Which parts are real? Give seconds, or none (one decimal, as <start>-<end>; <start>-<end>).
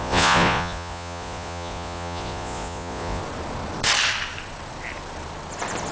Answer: 3.2-5.9